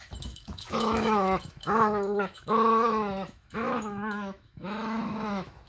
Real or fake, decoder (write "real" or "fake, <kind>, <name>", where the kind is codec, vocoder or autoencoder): fake, autoencoder, DAC-VAE